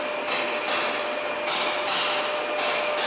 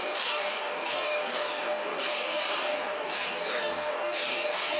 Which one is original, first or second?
first